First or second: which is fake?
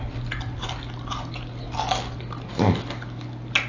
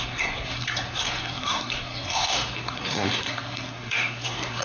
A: second